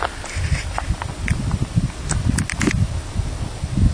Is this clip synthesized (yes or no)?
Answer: no